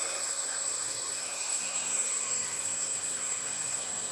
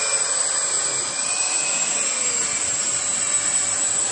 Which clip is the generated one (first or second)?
first